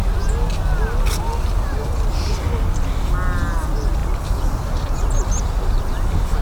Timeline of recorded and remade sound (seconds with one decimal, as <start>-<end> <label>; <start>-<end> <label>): 0.0-6.4 recorded